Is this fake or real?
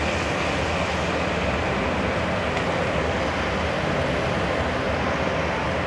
real